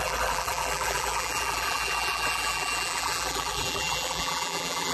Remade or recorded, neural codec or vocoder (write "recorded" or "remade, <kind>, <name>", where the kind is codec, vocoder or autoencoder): remade, vocoder, BigVGAN v2